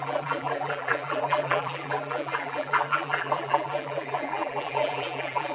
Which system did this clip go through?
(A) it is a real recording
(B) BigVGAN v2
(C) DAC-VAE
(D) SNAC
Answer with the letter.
B